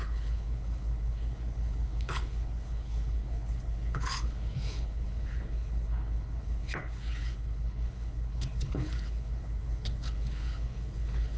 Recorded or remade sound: remade